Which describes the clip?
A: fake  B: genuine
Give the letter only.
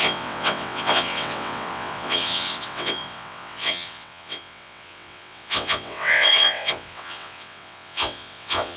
A